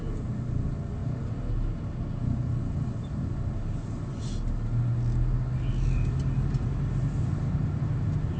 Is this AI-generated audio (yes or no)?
no